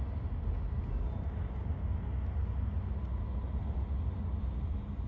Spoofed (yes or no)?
no